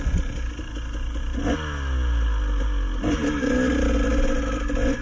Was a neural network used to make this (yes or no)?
no